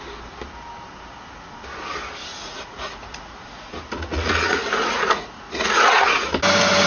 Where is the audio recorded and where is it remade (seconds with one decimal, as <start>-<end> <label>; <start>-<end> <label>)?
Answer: 0.0-2.3 recorded; 2.3-6.3 remade; 6.3-6.9 recorded